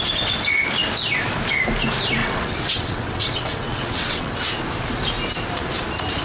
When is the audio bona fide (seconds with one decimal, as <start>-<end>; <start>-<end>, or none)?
0.0-2.2; 4.3-6.2